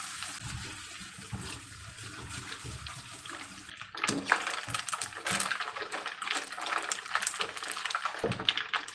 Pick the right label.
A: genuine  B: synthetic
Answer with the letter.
A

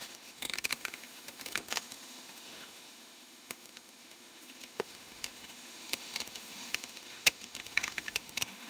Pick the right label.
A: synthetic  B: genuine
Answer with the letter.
A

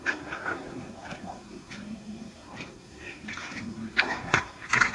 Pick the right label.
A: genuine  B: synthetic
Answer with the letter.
B